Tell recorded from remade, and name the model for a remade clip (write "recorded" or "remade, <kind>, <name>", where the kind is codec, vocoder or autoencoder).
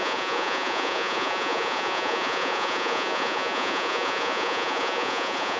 remade, vocoder, Vocos